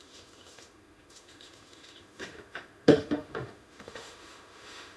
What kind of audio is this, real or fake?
fake